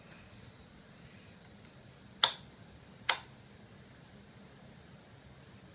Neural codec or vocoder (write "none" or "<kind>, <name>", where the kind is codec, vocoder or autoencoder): none